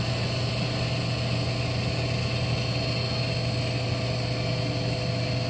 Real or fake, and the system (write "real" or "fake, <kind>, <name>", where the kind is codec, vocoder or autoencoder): real